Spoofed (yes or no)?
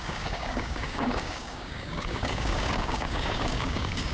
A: yes